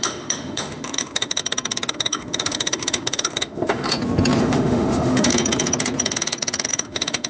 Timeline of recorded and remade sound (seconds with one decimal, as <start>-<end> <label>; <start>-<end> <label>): 0.0-1.4 remade; 1.4-1.9 recorded; 1.9-3.9 remade; 3.9-4.4 recorded; 4.4-5.3 remade; 5.3-6.7 recorded; 6.7-7.3 remade